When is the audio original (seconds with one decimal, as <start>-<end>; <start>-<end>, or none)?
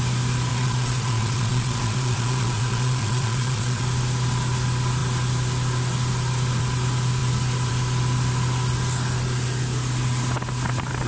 0.0-0.5; 3.8-11.1